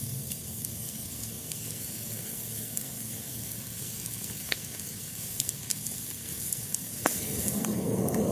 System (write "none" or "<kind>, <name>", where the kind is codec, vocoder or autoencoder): codec, SNAC